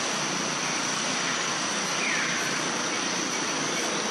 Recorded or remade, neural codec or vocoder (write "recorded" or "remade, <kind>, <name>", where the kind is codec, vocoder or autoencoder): recorded